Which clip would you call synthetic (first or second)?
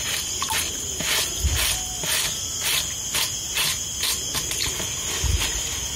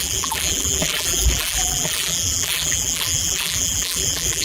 second